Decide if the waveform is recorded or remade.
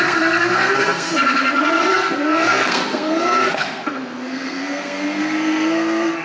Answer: remade